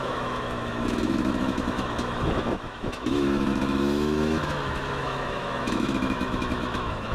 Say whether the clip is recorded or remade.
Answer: remade